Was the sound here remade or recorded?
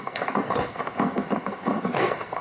remade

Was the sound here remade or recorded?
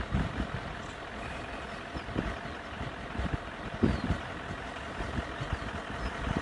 remade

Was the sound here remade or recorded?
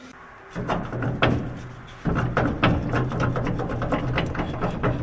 recorded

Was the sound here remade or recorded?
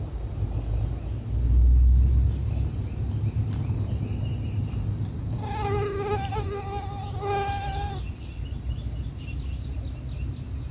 recorded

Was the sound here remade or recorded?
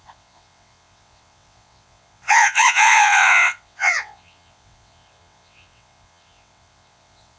remade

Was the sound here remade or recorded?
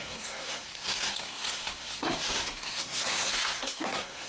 remade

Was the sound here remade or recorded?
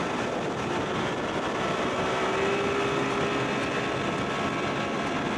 recorded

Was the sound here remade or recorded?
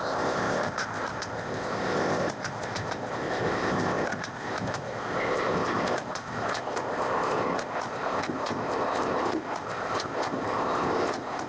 remade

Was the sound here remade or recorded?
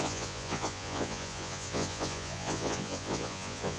remade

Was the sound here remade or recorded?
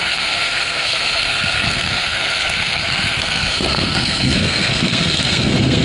remade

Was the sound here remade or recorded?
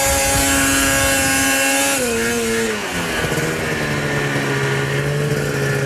recorded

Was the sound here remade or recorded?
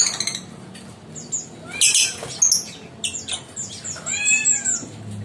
recorded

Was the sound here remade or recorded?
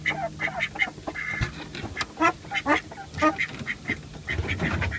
recorded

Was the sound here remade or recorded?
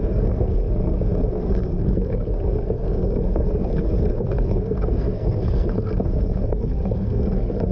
remade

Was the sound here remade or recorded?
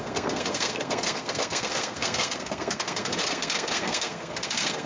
remade